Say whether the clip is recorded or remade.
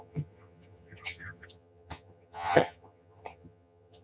remade